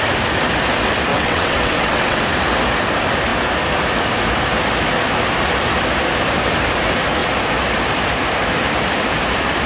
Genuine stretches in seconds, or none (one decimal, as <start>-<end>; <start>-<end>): 0.0-1.1; 2.2-9.7